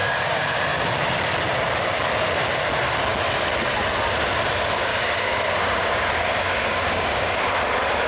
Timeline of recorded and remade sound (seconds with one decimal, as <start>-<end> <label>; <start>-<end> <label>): 0.0-0.6 remade; 0.6-4.9 recorded; 4.9-5.8 remade; 5.8-6.4 recorded; 6.4-7.4 remade; 7.4-8.1 recorded